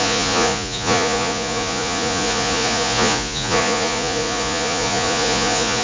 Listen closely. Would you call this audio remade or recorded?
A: remade